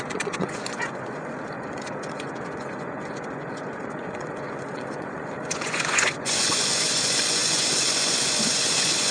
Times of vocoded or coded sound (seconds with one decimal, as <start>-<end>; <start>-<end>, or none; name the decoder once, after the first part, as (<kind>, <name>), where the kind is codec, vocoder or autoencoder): 0.0-9.1 (vocoder, Vocos)